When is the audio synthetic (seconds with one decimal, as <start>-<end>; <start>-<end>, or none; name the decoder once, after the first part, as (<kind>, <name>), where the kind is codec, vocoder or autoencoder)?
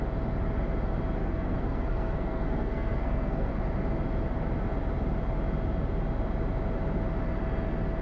1.2-3.5 (codec, SNAC)